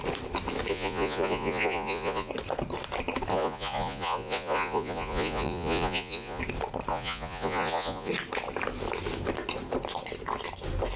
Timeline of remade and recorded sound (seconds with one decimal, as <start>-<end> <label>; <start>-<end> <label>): 0.0-0.7 recorded; 0.7-2.3 remade; 2.3-3.3 recorded; 3.3-6.4 remade; 6.4-6.9 recorded; 6.9-8.1 remade; 8.1-11.0 recorded